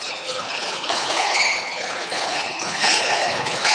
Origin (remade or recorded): remade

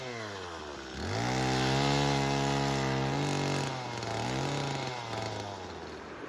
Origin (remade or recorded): recorded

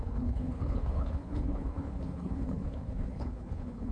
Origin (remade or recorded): remade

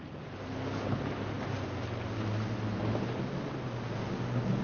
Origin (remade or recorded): recorded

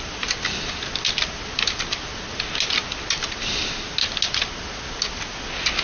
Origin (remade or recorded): recorded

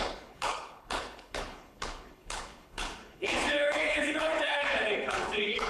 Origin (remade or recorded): remade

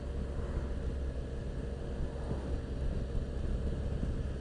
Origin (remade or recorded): recorded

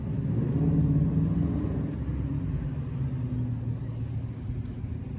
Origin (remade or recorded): recorded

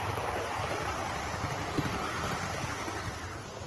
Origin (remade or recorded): recorded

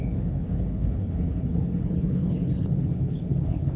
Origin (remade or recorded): remade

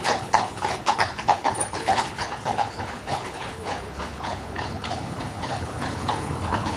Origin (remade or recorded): remade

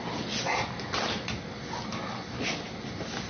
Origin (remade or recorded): recorded